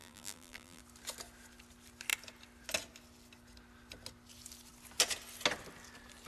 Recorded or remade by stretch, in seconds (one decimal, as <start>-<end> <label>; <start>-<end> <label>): 0.0-0.8 remade; 0.8-6.3 recorded